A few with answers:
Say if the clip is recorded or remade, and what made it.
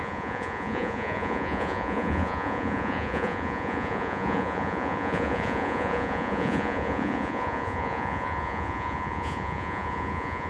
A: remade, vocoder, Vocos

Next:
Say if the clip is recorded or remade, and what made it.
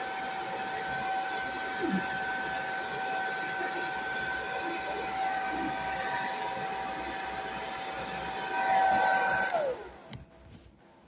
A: recorded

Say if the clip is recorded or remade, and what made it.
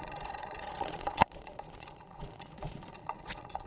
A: remade, vocoder, Vocos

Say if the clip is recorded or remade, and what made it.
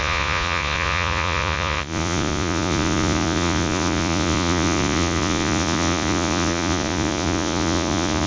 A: remade, vocoder, Vocos